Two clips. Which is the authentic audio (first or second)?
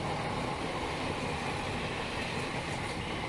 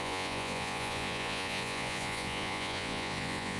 first